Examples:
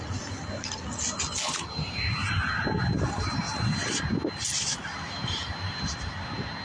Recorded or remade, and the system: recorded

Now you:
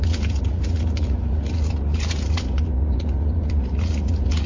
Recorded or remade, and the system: remade, vocoder, Vocos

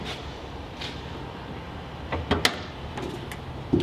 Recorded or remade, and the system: recorded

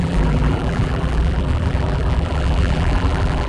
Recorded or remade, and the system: remade, vocoder, BigVGAN v2